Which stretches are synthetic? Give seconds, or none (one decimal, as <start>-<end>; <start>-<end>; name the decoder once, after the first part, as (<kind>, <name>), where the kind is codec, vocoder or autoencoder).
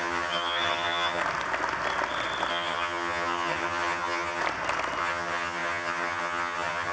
0.0-1.2 (vocoder, HiFi-GAN); 2.5-4.4; 5.0-6.9